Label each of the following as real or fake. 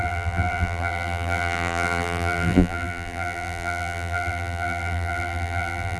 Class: fake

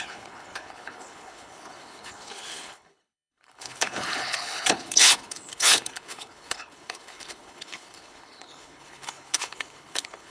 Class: fake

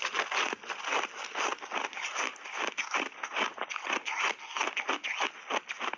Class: real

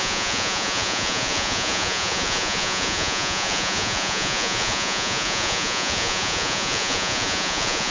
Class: fake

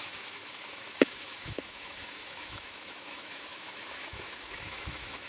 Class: fake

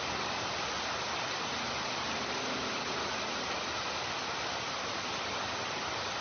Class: real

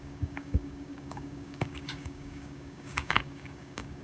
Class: fake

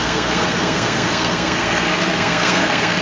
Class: fake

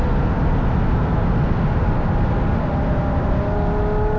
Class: real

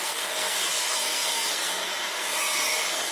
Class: fake